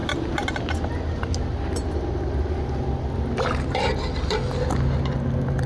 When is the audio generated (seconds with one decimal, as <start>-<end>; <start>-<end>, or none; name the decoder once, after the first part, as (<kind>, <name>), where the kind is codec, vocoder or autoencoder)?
none